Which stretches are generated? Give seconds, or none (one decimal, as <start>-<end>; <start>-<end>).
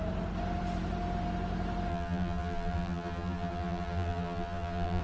1.9-5.0